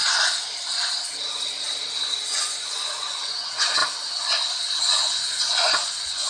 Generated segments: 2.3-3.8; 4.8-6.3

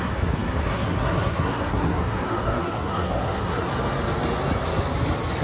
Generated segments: 0.0-3.7

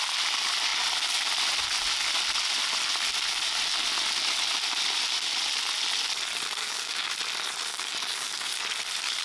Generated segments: 6.6-7.1; 7.7-8.5

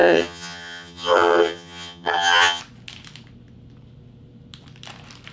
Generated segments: 0.0-2.6

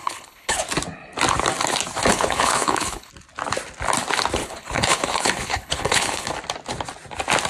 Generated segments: 0.0-0.6; 2.1-3.1; 4.4-6.3

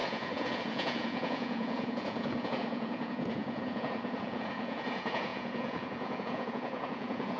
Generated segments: 0.0-7.4

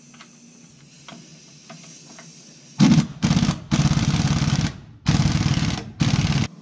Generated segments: none